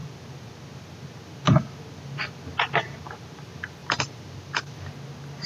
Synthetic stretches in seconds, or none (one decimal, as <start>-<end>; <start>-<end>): 3.8-4.9